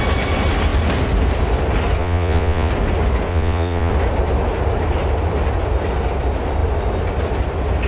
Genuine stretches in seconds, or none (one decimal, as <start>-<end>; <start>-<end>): 0.0-2.0; 2.7-3.3; 3.9-7.9